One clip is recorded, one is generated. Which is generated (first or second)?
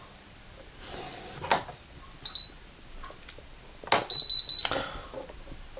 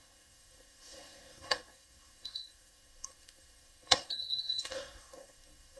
second